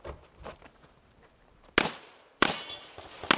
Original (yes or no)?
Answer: yes